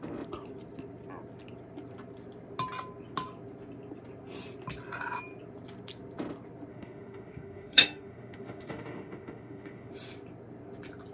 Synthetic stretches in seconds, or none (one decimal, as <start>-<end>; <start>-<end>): 6.7-9.9